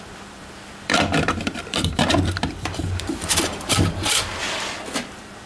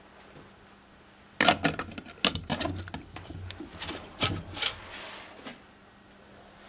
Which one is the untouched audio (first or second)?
second